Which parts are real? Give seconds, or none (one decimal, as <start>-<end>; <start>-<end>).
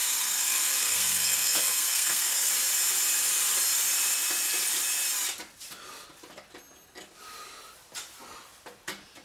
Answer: 2.5-9.2